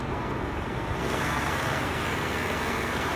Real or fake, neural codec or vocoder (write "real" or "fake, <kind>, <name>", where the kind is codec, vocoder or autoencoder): fake, codec, SNAC